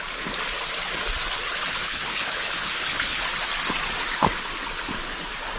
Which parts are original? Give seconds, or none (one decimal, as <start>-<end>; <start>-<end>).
0.0-1.7; 3.2-5.6